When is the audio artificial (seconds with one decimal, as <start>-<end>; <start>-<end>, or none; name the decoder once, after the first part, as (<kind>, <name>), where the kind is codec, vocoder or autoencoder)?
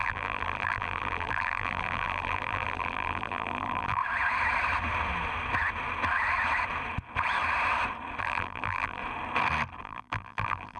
0.0-4.0 (vocoder, BigVGAN v2); 8.2-9.0; 9.8-10.8